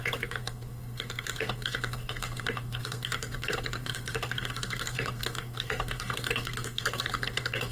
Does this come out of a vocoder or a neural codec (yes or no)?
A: yes